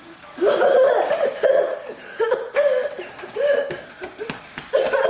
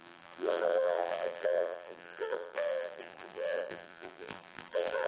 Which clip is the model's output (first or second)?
second